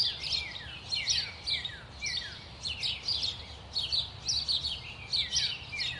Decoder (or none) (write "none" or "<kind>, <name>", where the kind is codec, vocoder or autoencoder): none